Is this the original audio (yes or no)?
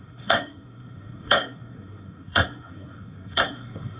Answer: no